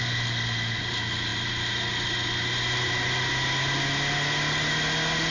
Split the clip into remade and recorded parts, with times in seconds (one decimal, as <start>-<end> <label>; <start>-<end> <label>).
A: 0.0-5.3 recorded